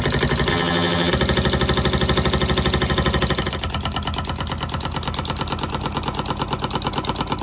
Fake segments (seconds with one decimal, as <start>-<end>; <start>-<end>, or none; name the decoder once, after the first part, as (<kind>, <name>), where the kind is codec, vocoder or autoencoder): 0.5-1.1 (vocoder, HiFi-GAN)